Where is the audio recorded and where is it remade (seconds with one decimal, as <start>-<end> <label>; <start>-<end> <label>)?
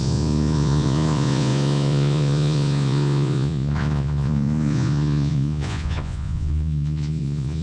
0.0-7.6 remade